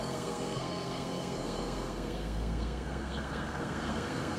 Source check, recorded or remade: remade